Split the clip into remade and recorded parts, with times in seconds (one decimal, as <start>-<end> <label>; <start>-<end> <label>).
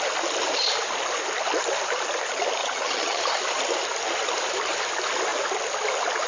0.0-2.6 recorded; 2.6-3.2 remade; 3.2-6.3 recorded